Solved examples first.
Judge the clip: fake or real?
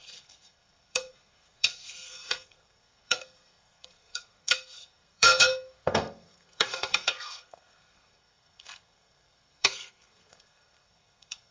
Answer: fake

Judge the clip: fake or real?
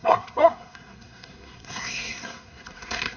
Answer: fake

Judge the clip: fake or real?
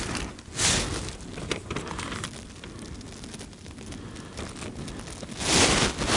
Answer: real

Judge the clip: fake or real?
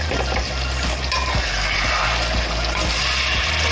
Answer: real